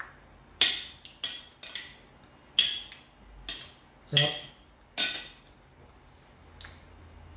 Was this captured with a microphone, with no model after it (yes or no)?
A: yes